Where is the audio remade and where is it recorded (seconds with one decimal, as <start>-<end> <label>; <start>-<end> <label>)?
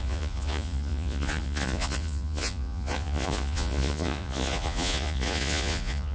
0.0-6.1 remade